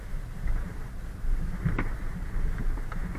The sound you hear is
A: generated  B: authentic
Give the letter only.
B